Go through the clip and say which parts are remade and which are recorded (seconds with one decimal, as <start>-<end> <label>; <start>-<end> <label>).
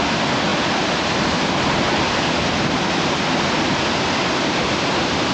0.0-5.3 recorded